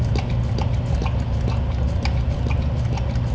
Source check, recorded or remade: recorded